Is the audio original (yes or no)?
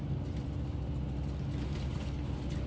yes